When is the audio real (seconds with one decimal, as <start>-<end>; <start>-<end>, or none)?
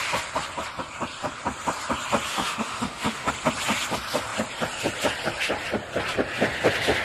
0.0-2.3; 3.3-7.0